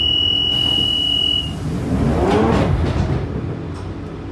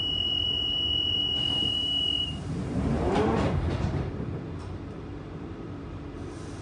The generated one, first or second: second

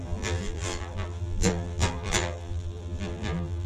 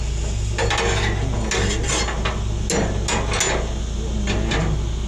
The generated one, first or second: first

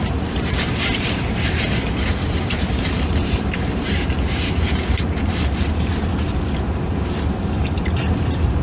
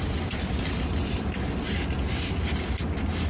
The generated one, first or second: first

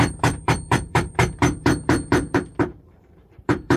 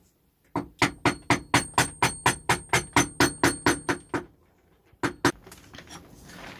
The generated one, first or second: first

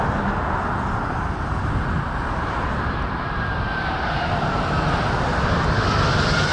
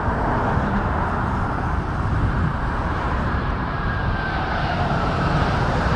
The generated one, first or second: second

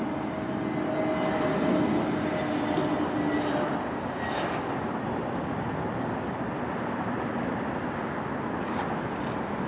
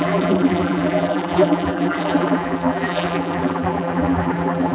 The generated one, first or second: second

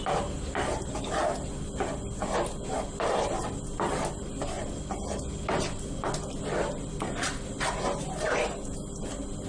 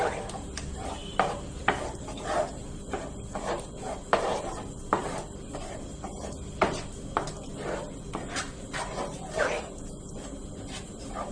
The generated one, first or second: second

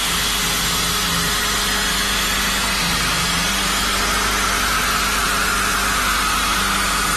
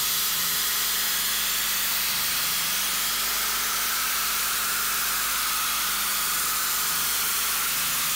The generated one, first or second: second